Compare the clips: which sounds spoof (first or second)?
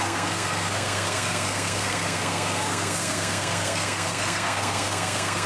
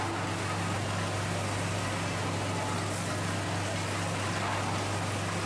first